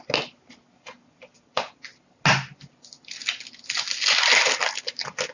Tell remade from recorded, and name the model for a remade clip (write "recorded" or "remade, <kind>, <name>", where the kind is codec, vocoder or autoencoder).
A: recorded